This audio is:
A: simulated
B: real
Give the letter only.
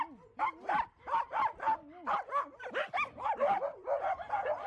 B